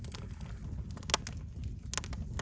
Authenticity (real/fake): real